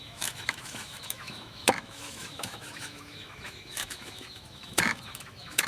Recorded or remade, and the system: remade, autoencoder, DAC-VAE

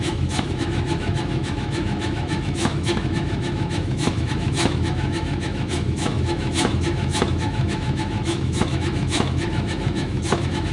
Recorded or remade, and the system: remade, autoencoder, DAC-VAE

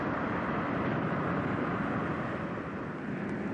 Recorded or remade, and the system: recorded